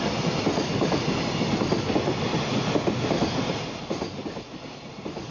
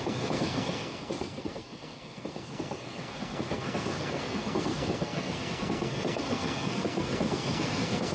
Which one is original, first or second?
first